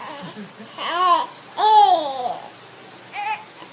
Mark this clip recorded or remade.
recorded